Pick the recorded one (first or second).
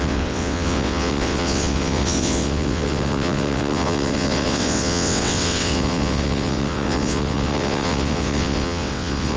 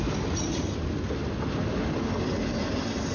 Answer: second